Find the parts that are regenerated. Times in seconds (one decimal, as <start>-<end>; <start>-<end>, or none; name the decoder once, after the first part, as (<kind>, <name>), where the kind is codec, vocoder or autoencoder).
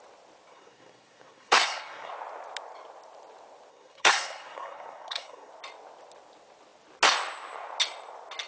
0.5-2.1 (codec, SNAC); 3.7-5.5